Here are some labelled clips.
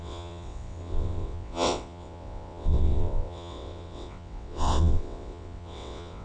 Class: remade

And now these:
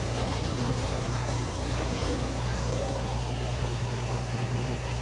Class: remade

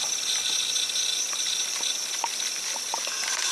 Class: recorded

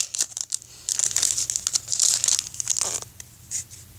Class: recorded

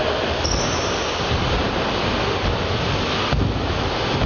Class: recorded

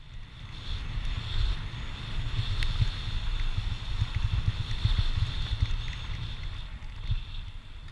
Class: recorded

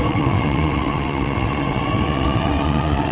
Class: remade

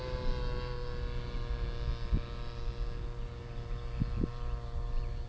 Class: recorded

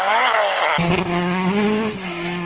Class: recorded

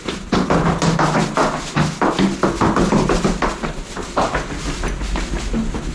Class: recorded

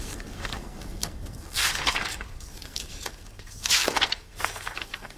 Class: remade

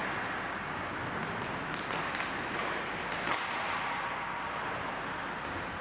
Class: recorded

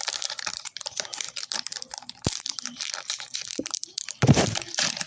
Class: remade